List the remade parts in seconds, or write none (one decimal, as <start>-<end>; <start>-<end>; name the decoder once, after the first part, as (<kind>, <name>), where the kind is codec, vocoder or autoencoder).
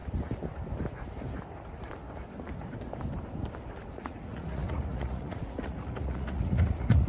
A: 3.9-7.1 (vocoder, Vocos)